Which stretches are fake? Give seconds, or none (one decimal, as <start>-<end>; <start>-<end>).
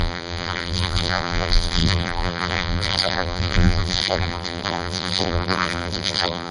0.0-6.5